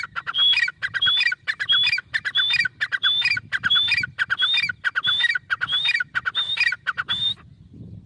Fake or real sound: real